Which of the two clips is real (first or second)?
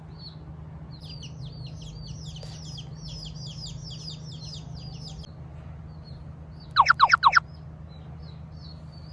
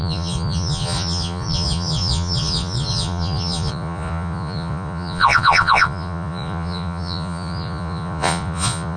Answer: first